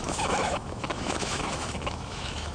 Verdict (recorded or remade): remade